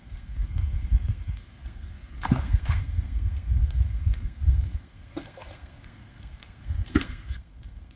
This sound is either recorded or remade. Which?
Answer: remade